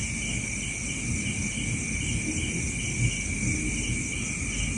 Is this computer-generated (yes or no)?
no